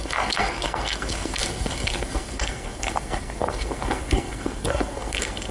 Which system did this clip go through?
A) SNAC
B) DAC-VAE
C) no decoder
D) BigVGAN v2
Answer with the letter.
A